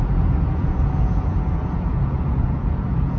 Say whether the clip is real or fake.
fake